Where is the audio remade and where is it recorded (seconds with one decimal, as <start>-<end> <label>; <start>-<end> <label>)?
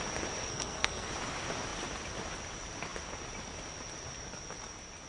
0.0-0.5 recorded; 0.5-1.1 remade; 1.1-5.1 recorded